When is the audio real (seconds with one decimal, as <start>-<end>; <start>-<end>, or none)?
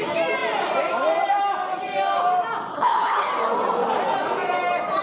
0.0-2.7; 3.3-5.0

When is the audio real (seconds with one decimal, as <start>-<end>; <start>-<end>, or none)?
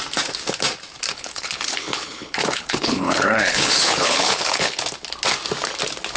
0.0-1.1; 4.8-6.2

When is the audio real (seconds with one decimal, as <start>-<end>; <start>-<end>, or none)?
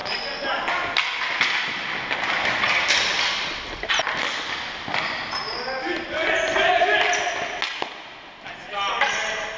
0.0-9.6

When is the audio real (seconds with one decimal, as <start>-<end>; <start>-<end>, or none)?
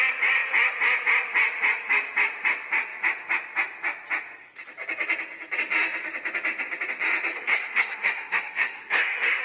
0.0-7.3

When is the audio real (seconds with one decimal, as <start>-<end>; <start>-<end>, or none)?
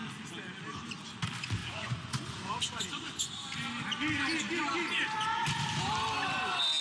0.0-1.6; 3.4-6.8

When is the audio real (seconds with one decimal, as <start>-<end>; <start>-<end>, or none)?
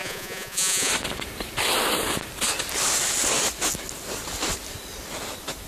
0.9-5.7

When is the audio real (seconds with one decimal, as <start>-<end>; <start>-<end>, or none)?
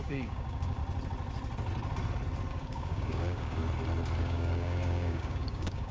0.8-2.5; 3.6-4.2